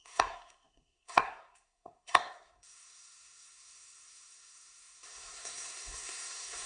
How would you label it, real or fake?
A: fake